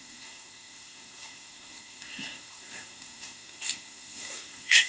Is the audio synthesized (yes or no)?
yes